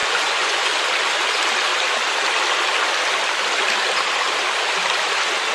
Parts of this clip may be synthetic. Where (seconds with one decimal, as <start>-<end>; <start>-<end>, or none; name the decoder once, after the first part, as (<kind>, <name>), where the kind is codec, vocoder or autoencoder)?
0.0-0.7 (vocoder, Vocos)